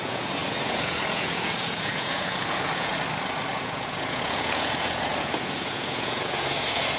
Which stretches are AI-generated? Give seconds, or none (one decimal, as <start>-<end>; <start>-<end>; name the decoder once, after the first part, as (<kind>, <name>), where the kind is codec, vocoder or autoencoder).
0.0-2.9 (vocoder, Vocos); 3.5-7.0